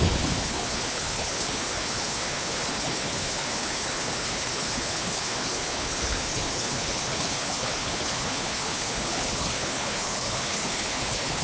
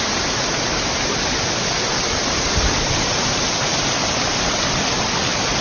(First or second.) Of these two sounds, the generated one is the first